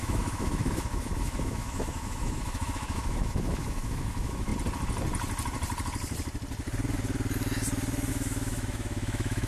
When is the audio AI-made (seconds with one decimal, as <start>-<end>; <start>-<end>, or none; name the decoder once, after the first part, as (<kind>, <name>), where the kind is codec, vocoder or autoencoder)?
0.0-4.5 (autoencoder, DAC-VAE); 8.1-9.5